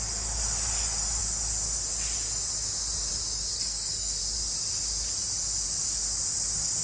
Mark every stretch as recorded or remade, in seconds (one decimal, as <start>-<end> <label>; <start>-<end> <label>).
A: 0.0-3.5 recorded; 3.5-4.2 remade; 4.2-6.8 recorded